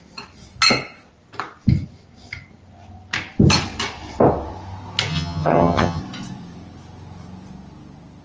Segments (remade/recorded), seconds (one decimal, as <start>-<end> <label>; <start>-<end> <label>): 0.0-5.1 recorded; 5.1-6.0 remade; 6.0-8.2 recorded